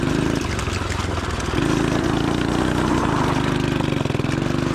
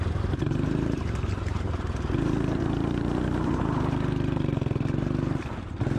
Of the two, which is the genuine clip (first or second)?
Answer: first